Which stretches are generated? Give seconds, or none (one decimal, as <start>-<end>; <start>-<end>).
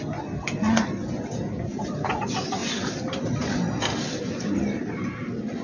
none